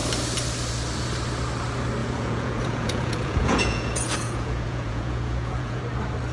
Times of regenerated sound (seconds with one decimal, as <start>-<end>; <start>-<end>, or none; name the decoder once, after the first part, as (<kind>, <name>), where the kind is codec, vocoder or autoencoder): 2.0-5.8 (vocoder, Vocos)